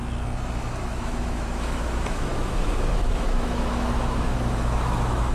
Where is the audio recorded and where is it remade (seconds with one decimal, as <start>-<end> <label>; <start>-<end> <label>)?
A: 0.0-0.7 recorded; 0.7-5.3 remade